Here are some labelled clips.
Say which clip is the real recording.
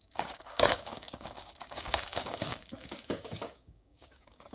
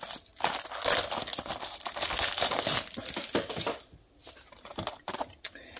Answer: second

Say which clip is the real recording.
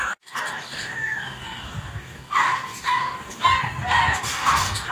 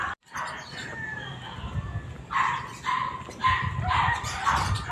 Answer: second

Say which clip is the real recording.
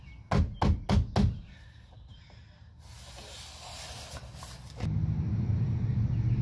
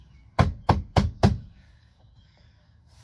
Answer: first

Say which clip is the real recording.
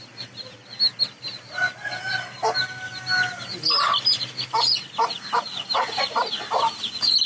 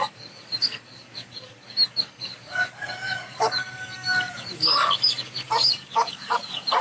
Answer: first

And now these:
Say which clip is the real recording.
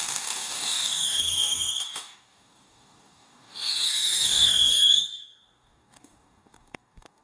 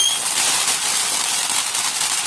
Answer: second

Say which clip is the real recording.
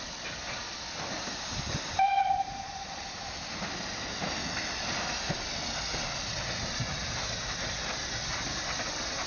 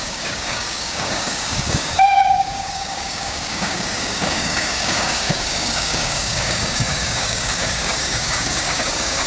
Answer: first